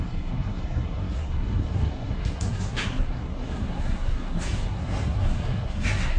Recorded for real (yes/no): no